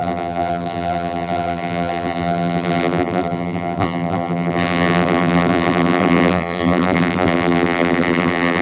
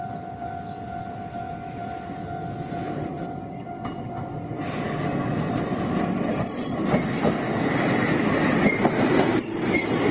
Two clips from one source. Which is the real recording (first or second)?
second